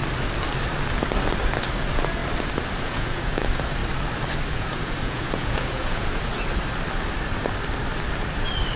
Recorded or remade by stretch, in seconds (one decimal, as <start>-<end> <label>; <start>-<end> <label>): 0.0-1.8 recorded; 1.8-2.2 remade; 2.2-2.8 recorded; 2.8-3.8 remade; 3.8-4.5 recorded; 4.5-6.3 remade; 6.3-8.8 recorded